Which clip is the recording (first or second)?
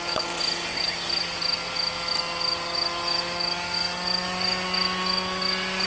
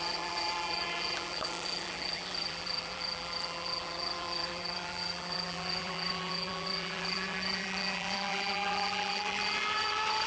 first